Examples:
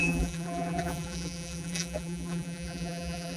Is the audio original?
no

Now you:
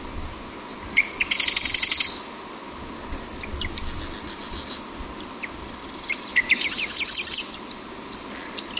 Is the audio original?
yes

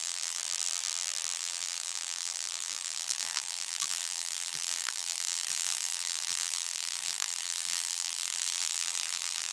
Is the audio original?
no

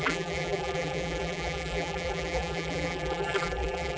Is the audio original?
no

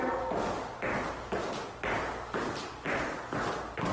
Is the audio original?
yes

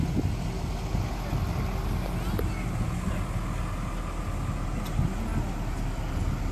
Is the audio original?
yes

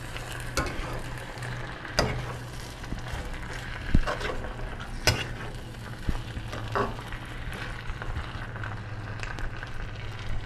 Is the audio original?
yes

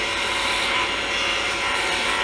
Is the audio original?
no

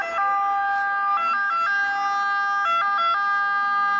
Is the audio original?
yes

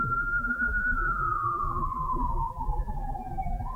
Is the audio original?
no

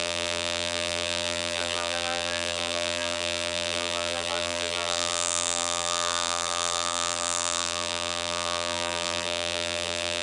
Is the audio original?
no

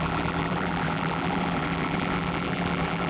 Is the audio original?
no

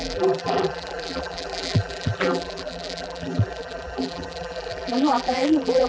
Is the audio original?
no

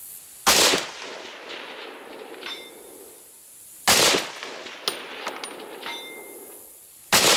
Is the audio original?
yes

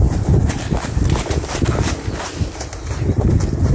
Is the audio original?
yes